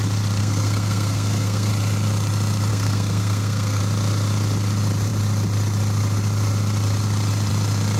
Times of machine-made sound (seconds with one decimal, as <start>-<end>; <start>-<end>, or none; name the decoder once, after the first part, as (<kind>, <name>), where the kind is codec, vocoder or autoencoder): 0.4-1.7 (codec, SNAC); 2.7-3.8

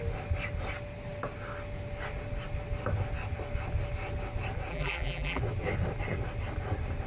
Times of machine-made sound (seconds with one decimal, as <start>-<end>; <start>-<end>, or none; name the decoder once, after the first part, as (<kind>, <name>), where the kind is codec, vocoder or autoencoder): 4.7-5.4 (vocoder, BigVGAN v2)

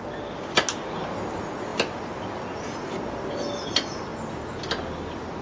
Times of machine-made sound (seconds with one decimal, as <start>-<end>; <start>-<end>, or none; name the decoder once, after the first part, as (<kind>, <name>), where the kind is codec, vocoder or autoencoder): none

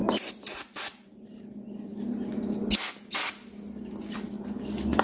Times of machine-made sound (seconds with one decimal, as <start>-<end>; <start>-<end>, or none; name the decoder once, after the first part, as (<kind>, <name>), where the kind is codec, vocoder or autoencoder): 0.0-1.4 (vocoder, BigVGAN v2)

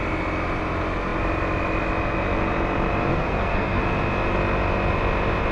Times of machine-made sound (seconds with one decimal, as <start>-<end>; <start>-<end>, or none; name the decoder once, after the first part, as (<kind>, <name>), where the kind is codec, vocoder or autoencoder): 3.1-3.8 (codec, SNAC)

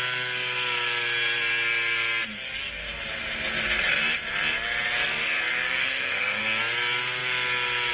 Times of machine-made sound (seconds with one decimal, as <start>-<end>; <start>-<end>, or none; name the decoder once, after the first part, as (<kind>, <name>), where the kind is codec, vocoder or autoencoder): 5.8-6.4 (codec, SNAC)